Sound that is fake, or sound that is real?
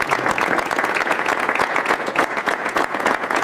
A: fake